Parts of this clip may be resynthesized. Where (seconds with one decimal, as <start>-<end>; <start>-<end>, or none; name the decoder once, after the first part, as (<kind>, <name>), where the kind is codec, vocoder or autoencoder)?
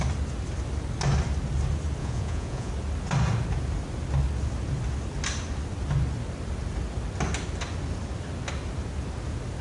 2.0-2.7 (vocoder, Vocos)